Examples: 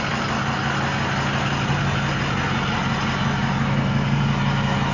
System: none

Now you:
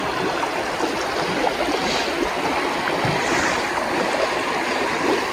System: none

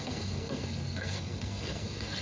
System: codec, SNAC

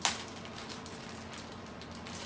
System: none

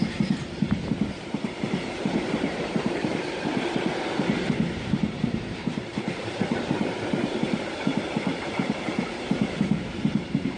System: vocoder, BigVGAN v2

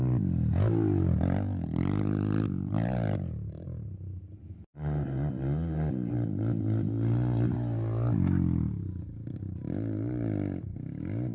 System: none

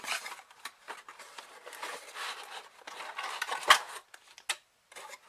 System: none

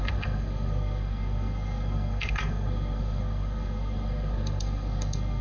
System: codec, SNAC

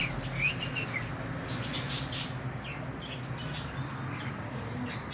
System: none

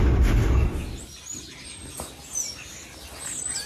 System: none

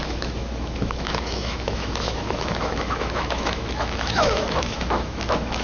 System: autoencoder, DAC-VAE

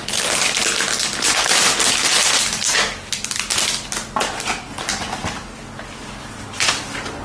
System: none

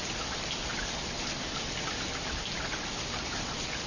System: none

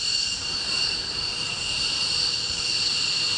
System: vocoder, BigVGAN v2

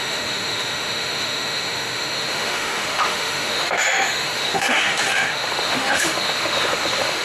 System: autoencoder, DAC-VAE